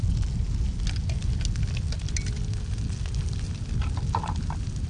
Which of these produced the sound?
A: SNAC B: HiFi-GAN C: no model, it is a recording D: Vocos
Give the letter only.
C